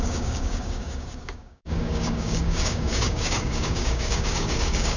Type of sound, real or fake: fake